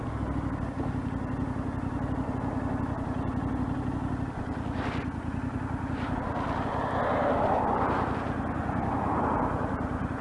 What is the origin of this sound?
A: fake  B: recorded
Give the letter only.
B